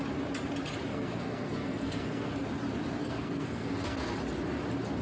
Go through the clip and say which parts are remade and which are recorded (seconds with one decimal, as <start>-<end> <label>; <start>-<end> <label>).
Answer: 0.0-0.9 recorded; 0.9-2.3 remade; 2.3-3.0 recorded; 3.0-4.1 remade; 4.1-5.0 recorded